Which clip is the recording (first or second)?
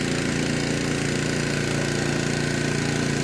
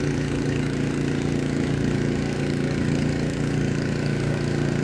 first